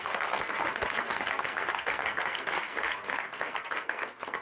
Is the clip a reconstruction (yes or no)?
yes